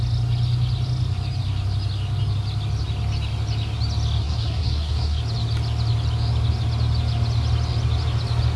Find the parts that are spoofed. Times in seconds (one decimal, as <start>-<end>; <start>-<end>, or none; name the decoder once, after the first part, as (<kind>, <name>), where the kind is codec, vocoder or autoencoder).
4.2-5.2 (codec, SNAC)